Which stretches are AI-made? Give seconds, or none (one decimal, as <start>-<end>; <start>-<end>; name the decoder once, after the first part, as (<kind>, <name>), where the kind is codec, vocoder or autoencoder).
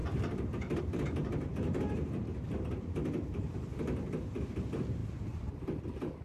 0.0-6.2 (vocoder, BigVGAN v2)